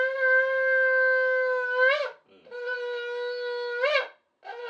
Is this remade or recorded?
recorded